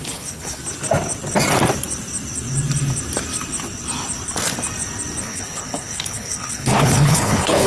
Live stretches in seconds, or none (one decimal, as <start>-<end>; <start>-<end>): 0.6-5.2